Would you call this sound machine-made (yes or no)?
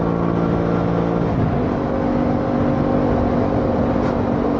no